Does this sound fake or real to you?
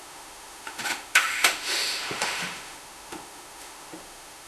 fake